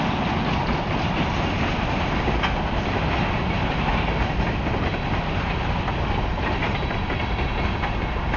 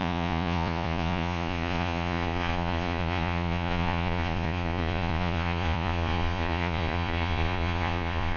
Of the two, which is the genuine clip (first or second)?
first